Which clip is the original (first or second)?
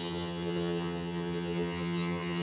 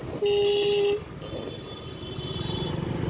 second